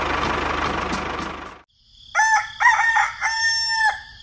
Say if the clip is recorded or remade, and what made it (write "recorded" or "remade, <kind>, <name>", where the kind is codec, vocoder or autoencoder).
recorded